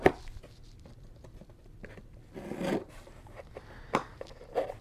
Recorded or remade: recorded